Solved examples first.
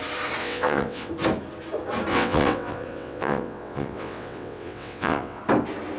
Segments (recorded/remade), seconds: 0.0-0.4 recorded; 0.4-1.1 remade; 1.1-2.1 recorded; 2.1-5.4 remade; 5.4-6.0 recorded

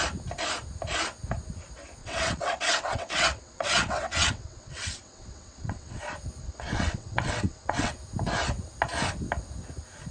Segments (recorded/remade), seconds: 0.0-2.0 recorded; 2.0-6.0 remade; 6.0-6.4 recorded; 6.4-7.9 remade; 7.9-10.1 recorded

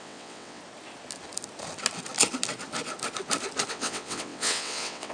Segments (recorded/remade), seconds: 0.0-0.6 remade; 0.6-3.7 recorded; 3.7-5.1 remade

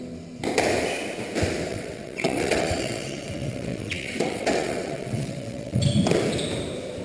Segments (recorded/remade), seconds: 0.0-1.7 recorded; 1.7-5.8 remade; 5.8-7.0 recorded